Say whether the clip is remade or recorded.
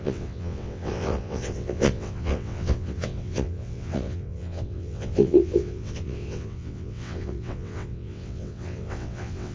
remade